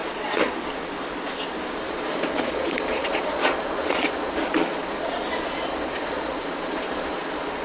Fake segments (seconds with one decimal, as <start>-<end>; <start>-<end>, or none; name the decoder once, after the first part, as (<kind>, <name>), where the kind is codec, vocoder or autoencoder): 0.0-7.6 (vocoder, Vocos)